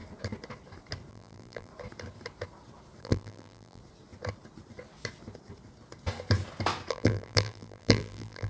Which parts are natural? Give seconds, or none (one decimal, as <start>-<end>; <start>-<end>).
0.0-1.1; 1.7-3.0; 3.8-6.9

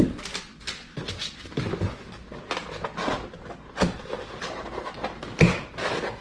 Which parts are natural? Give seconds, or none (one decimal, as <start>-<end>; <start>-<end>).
0.0-6.2

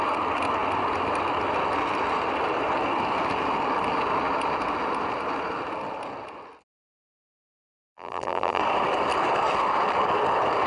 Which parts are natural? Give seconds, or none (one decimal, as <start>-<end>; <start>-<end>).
0.0-6.8; 8.6-10.7